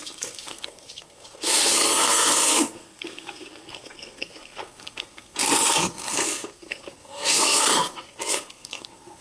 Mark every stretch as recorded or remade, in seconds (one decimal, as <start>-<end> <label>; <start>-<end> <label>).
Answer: 0.0-9.2 remade